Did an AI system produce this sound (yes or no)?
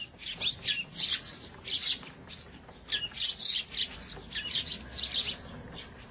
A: no